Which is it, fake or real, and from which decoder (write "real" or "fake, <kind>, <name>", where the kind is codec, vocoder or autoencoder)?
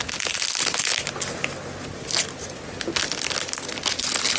real